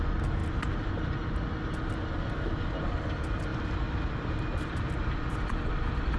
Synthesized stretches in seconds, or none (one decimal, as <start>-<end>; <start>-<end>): 0.4-0.9

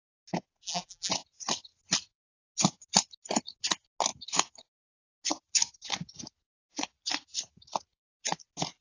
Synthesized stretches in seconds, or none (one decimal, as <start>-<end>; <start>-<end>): 0.6-1.1